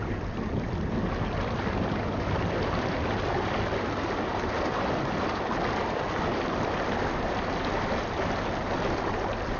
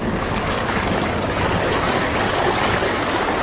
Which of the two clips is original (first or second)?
first